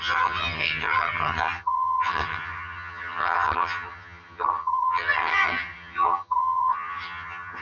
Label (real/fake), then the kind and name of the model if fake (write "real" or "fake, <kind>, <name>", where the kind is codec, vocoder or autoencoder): fake, vocoder, HiFi-GAN